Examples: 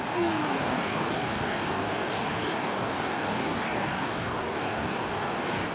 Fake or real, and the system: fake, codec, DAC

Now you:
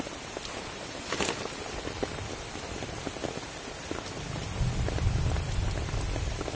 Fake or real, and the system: real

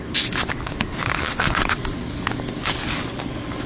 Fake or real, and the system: fake, codec, DAC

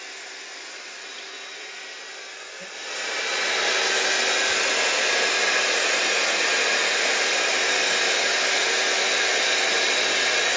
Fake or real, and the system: real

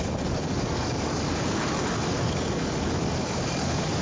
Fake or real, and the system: fake, codec, DAC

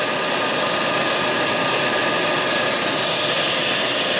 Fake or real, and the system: real